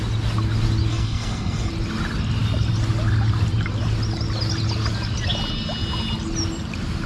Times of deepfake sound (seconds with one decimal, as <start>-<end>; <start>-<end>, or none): 0.9-1.7